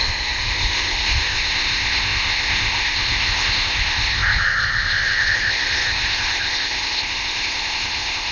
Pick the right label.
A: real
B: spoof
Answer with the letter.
B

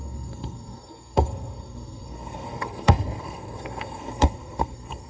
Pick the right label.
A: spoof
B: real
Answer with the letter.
A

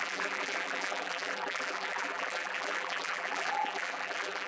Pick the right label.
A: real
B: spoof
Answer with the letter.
B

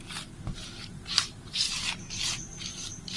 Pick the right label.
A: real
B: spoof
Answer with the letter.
A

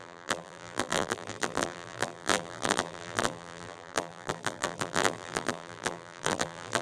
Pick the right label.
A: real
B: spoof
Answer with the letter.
B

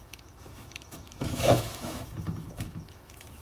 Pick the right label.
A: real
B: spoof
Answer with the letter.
B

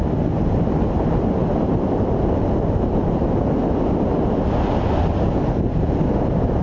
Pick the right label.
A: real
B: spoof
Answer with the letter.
A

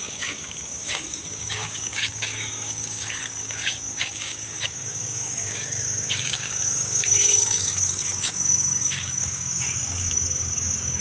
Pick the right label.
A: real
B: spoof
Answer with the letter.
B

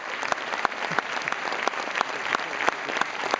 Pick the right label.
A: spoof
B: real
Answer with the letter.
A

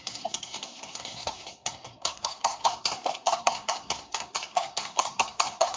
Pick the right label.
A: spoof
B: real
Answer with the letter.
A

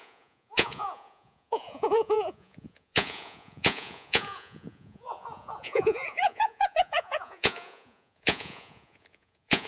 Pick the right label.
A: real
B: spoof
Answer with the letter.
B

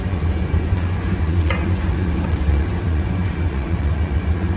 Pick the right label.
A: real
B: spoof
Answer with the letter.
B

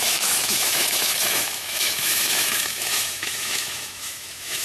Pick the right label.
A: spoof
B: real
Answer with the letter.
A